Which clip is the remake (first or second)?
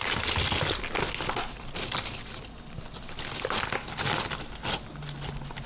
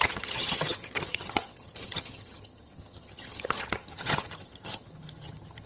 second